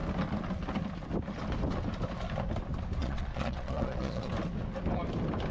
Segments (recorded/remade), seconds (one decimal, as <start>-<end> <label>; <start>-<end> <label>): 0.0-3.0 recorded; 3.0-4.3 remade; 4.3-5.5 recorded